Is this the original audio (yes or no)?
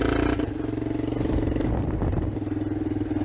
yes